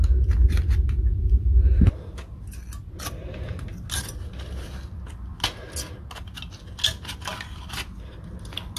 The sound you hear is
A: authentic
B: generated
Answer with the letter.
A